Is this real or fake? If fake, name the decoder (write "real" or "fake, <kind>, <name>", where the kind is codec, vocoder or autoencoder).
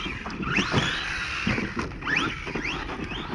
real